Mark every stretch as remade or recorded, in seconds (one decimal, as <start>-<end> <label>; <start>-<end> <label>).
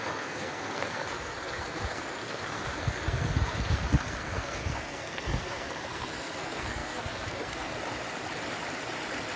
0.0-7.7 remade; 7.7-9.4 recorded